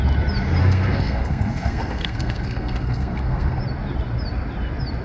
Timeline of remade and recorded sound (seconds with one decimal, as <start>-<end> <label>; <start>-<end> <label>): 0.0-0.6 recorded; 0.6-3.6 remade; 3.6-5.0 recorded